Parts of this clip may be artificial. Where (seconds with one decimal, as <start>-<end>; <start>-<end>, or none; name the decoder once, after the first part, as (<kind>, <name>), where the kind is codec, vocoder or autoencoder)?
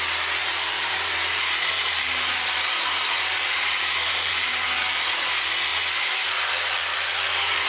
0.4-4.7 (vocoder, BigVGAN v2); 5.7-6.3